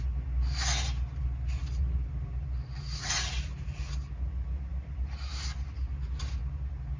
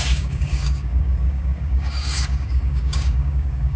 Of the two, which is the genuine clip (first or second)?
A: first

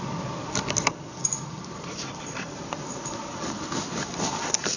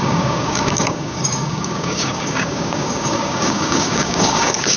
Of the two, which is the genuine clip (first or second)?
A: first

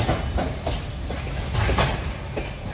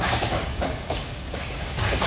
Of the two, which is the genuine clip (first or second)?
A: first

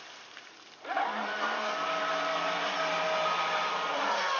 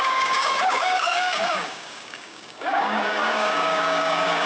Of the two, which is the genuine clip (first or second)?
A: first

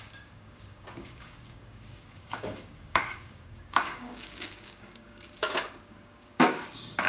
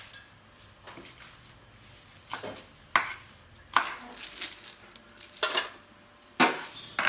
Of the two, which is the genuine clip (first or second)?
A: second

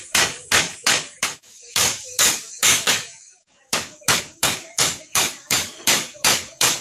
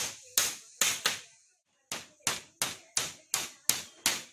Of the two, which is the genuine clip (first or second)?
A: second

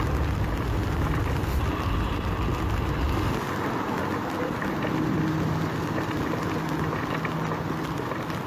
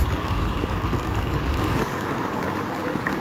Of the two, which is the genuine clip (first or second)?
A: first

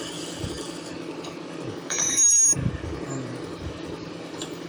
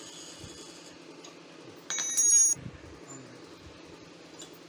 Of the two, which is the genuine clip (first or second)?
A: second